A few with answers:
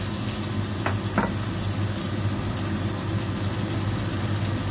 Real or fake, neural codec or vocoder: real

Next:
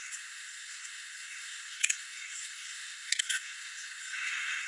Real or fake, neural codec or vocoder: fake, codec, SNAC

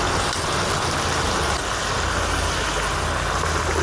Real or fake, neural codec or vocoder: real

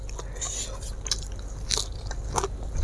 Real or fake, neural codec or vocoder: real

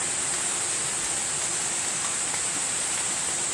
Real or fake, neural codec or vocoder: real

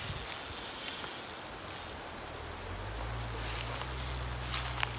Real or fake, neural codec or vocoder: real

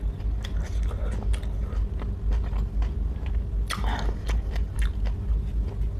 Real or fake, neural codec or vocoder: real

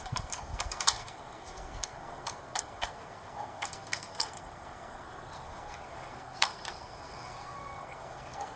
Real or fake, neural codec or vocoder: fake, codec, SNAC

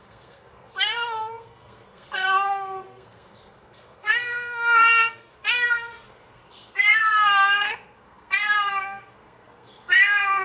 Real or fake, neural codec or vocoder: fake, codec, SNAC